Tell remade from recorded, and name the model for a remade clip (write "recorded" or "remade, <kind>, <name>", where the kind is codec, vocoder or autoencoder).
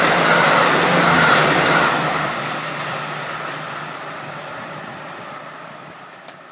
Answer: remade, vocoder, BigVGAN v2